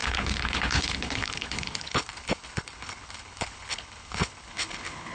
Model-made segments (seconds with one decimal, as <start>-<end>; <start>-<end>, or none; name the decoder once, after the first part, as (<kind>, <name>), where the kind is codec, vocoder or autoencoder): 0.0-5.1 (codec, HILCodec)